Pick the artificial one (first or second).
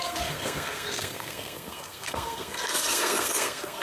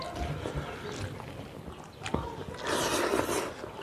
first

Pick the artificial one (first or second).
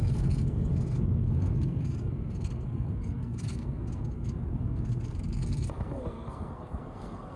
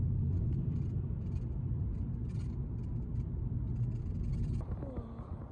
first